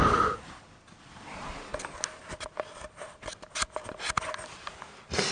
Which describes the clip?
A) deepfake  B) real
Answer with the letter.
B